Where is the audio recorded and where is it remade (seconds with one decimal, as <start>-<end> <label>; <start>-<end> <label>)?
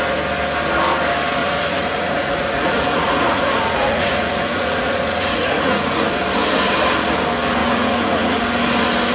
0.0-1.4 recorded; 1.4-6.1 remade; 6.1-7.6 recorded; 7.6-8.4 remade; 8.4-9.1 recorded